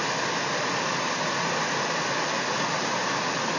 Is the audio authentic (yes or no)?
yes